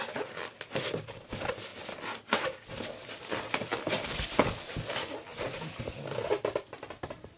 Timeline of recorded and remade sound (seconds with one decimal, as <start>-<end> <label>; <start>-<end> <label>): 0.0-1.7 recorded; 1.7-2.7 remade; 2.7-3.7 recorded; 3.7-4.4 remade; 4.4-5.3 recorded; 5.3-5.8 remade; 5.8-7.4 recorded